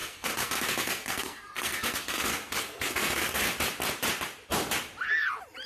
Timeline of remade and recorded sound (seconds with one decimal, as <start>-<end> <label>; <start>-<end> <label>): 0.0-3.4 remade; 3.4-5.7 recorded